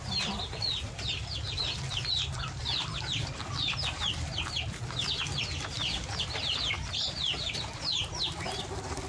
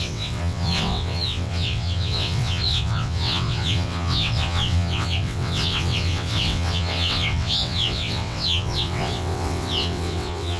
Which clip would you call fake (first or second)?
second